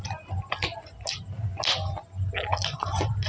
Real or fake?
real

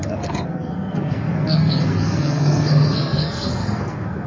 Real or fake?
fake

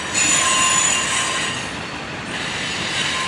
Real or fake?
real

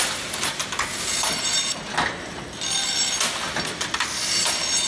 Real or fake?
real